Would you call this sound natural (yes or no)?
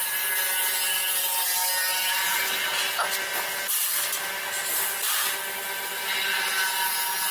yes